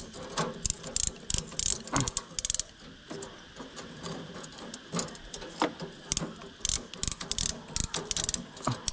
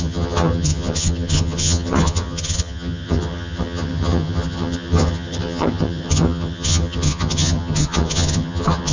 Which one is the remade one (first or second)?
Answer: second